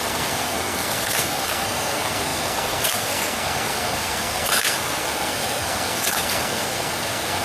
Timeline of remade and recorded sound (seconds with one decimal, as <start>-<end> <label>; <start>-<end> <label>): 0.0-7.4 remade